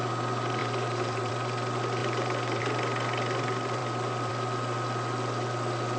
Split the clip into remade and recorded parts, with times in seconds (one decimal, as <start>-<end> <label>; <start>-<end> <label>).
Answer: 0.0-0.6 recorded; 0.6-1.3 remade; 1.3-2.0 recorded; 2.0-2.6 remade; 2.6-6.0 recorded